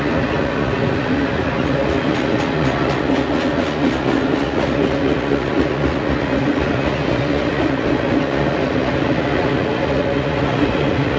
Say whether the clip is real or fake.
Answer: fake